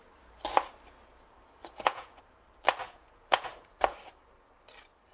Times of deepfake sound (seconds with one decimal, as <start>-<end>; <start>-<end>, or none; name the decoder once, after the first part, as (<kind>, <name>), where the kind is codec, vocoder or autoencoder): 1.6-2.2 (vocoder, Vocos); 2.8-3.8